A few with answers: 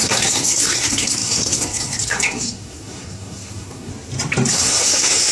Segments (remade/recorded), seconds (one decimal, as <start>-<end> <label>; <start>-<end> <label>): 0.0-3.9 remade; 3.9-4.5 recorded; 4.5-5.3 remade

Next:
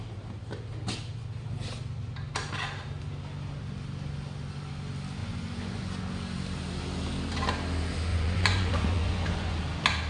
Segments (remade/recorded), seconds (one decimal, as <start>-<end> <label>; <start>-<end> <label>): 0.0-5.2 recorded; 5.2-5.9 remade; 5.9-8.1 recorded; 8.1-9.6 remade; 9.6-10.1 recorded

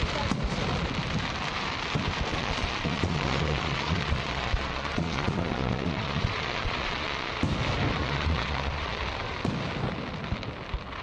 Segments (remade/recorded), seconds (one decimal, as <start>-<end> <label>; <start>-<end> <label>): 0.0-2.3 recorded; 2.3-7.3 remade; 7.3-8.0 recorded; 8.0-9.0 remade; 9.0-11.0 recorded

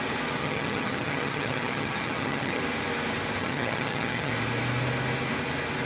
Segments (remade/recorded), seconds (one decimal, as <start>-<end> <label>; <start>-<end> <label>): 0.0-0.4 recorded; 0.4-2.6 remade; 2.6-3.4 recorded; 3.4-4.3 remade; 4.3-5.9 recorded

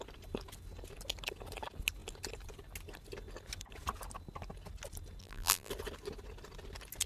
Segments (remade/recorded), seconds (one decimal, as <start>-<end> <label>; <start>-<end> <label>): 0.0-5.2 recorded; 5.2-5.7 remade; 5.7-7.1 recorded

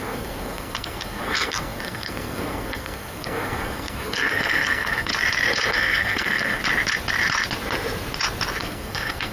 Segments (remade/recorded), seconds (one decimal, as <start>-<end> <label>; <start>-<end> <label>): 0.0-5.1 remade; 5.1-5.7 recorded; 5.7-6.6 remade; 6.6-8.6 recorded; 8.6-9.3 remade

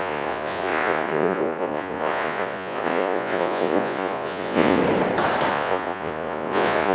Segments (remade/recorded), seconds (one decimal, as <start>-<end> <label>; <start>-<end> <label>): 0.0-4.8 remade; 4.8-5.5 recorded; 5.5-6.9 remade

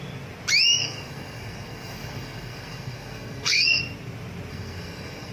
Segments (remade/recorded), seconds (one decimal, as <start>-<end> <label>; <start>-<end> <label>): 0.0-0.8 recorded; 0.8-3.8 remade; 3.8-4.5 recorded; 4.5-5.3 remade